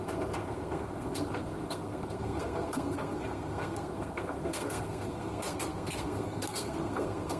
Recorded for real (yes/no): no